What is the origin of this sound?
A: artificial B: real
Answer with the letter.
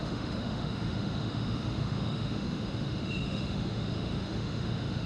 A